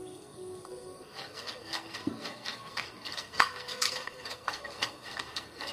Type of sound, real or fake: fake